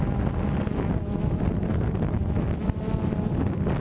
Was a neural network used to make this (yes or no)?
no